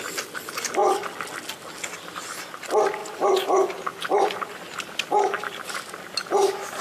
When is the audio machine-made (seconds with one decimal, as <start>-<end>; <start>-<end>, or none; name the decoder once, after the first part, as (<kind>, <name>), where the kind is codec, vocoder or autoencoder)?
none